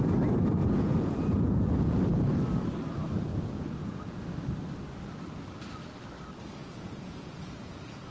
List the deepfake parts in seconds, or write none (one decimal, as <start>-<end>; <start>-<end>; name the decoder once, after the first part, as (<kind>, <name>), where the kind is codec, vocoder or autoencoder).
0.6-2.3 (vocoder, Vocos); 3.3-4.2; 6.6-8.1